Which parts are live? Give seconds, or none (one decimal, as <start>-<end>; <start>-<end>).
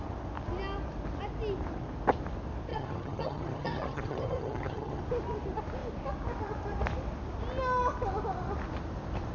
0.0-2.7; 5.0-9.3